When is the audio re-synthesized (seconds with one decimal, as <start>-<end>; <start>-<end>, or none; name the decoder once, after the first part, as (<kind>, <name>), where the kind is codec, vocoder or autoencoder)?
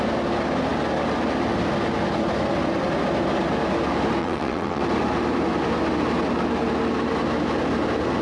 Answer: 4.2-4.8 (vocoder, WaveNeXt)